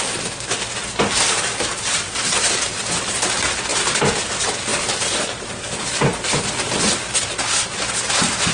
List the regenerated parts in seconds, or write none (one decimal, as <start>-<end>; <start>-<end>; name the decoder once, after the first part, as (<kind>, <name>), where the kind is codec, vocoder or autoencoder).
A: none